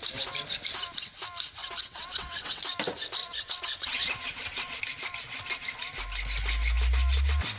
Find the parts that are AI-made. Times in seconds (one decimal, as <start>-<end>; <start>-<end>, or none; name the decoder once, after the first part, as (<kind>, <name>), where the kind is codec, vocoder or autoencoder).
1.6-2.6 (vocoder, WaveNeXt); 3.2-4.8